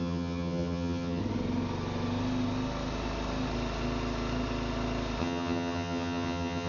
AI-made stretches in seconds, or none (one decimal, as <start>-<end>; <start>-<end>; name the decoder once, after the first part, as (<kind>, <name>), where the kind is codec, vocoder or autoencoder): 0.0-1.2 (vocoder, HiFi-GAN); 5.2-6.7